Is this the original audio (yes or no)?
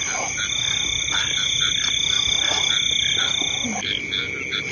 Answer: yes